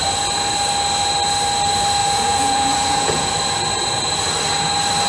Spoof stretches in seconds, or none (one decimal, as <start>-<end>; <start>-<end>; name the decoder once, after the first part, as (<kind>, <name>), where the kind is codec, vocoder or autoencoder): 2.0-3.3 (vocoder, Vocos)